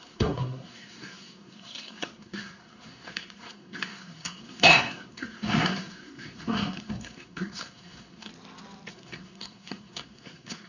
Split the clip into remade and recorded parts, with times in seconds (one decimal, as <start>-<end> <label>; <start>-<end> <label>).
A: 0.0-8.3 remade; 8.3-8.9 recorded; 8.9-10.7 remade